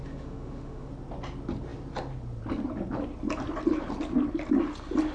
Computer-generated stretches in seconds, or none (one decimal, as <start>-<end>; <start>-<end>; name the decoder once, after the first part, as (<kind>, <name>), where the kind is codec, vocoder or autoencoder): 0.0-0.9 (autoencoder, DAC-VAE)